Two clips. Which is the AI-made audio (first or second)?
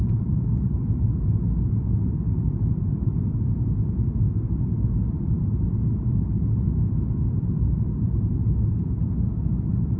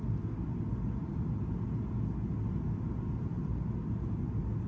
first